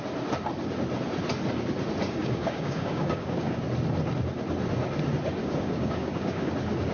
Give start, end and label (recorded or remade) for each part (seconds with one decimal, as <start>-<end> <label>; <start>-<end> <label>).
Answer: 0.0-2.2 recorded; 2.2-3.6 remade; 3.6-5.4 recorded; 5.4-6.5 remade; 6.5-6.9 recorded